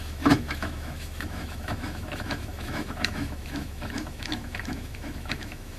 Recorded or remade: remade